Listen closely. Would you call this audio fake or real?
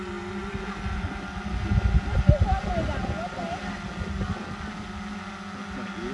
real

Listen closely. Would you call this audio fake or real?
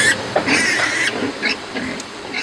fake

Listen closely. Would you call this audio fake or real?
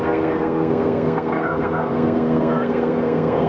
fake